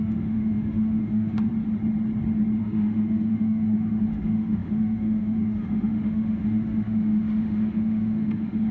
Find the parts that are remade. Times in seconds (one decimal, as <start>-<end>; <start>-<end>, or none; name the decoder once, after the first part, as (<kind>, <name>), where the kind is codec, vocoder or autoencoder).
0.0-1.5 (autoencoder, DAC-VAE); 2.6-8.7